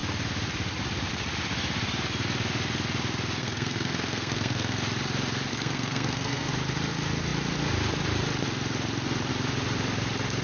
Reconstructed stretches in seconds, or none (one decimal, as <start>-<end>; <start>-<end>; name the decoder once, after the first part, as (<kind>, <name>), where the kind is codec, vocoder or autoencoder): 3.4-4.8 (codec, SNAC); 5.5-6.5